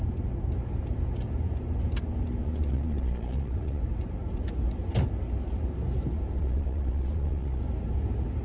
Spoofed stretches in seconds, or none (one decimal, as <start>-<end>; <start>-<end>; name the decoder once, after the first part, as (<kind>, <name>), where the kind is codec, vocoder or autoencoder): 2.4-3.8 (vocoder, Vocos); 6.4-7.6